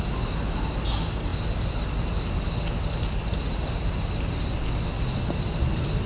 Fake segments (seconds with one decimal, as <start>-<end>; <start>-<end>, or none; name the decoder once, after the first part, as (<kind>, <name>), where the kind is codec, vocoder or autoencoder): none